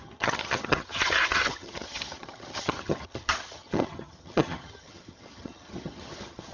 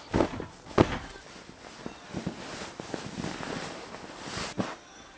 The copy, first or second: first